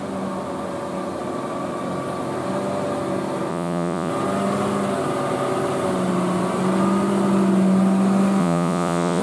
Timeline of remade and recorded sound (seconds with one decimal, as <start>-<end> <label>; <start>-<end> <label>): 0.0-3.5 recorded; 3.5-4.1 remade; 4.1-8.4 recorded; 8.4-9.2 remade